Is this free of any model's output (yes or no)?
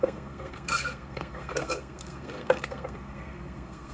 no